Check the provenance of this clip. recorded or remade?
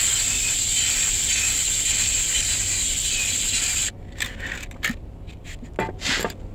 recorded